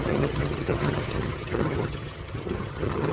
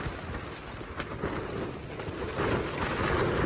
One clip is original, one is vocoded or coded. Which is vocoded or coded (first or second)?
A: first